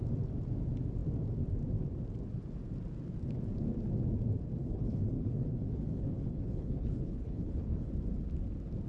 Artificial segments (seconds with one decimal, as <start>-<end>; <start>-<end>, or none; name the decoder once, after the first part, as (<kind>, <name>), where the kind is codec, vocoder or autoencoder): 4.6-7.9 (codec, HILCodec)